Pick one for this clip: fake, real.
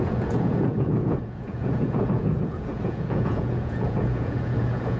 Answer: fake